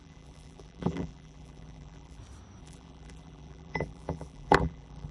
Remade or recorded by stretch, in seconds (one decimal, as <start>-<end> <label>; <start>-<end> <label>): 0.0-2.2 remade; 2.2-2.6 recorded; 2.6-5.1 remade